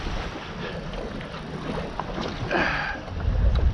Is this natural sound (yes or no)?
yes